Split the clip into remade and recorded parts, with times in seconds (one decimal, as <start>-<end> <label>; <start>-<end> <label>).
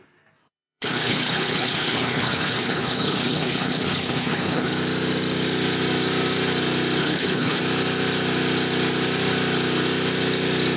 0.0-0.4 recorded; 0.4-4.7 remade; 4.7-7.0 recorded; 7.0-7.6 remade; 7.6-10.8 recorded